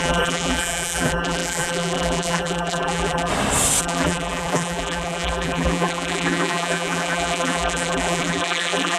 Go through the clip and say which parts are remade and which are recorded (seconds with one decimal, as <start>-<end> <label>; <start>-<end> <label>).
0.0-3.3 remade; 3.3-3.8 recorded; 3.8-9.0 remade